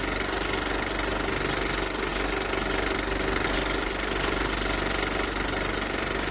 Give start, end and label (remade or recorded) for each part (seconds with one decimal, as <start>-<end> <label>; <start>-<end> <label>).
0.0-6.3 recorded